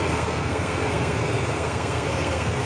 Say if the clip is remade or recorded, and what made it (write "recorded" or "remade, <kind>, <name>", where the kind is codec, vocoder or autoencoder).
remade, codec, SNAC